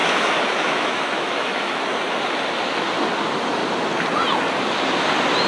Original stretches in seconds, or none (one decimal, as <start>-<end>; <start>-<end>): 1.8-5.5